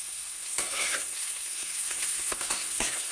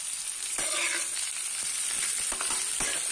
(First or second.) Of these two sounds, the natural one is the second